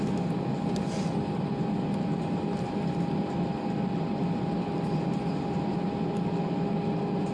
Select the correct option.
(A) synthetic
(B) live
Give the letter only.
B